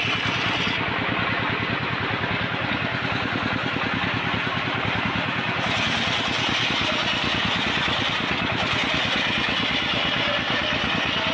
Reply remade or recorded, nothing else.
recorded